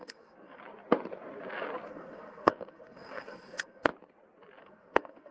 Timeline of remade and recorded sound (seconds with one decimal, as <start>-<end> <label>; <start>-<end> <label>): 0.0-0.6 remade; 0.6-1.9 recorded; 1.9-3.9 remade; 3.9-4.6 recorded; 4.6-5.3 remade